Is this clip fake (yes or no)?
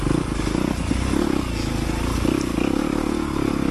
no